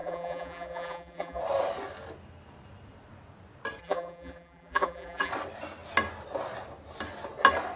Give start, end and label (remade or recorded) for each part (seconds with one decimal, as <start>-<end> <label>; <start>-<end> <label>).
0.0-1.4 remade; 1.4-3.8 recorded; 3.8-5.3 remade; 5.3-7.8 recorded